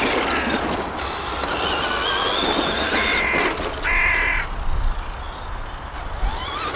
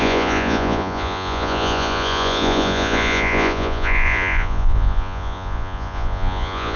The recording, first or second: first